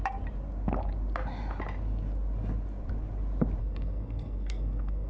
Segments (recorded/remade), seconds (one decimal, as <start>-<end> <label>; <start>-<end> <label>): 0.0-3.6 recorded; 3.6-5.1 remade